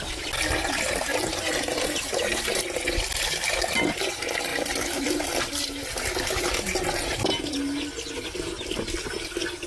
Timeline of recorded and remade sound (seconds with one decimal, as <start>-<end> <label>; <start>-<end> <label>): 0.0-1.1 recorded; 1.1-2.4 remade; 2.4-4.5 recorded; 4.5-7.2 remade; 7.2-9.7 recorded